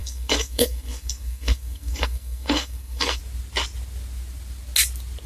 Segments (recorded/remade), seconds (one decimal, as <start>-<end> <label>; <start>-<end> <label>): 0.0-3.2 remade; 3.2-5.3 recorded